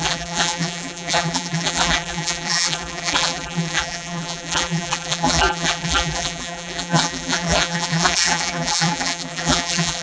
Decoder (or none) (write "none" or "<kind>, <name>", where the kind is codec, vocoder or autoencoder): vocoder, BigVGAN v2